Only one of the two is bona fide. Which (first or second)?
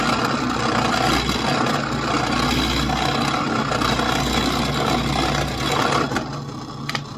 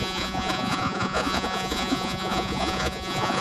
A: first